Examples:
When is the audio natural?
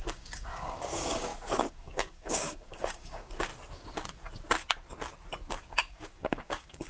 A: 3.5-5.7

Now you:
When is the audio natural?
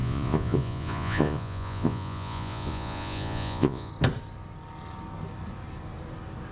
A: 3.9-6.5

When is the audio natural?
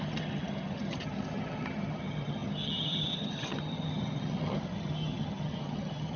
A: none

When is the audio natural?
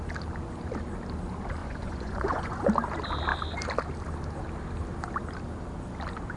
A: 0.0-1.6; 2.7-6.4